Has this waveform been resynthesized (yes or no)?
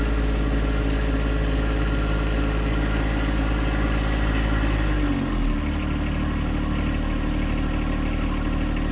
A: no